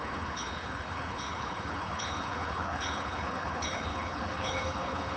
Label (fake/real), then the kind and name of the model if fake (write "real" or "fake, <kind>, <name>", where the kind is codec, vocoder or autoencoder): fake, codec, HILCodec